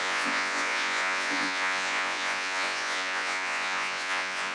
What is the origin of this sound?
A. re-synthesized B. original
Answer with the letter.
A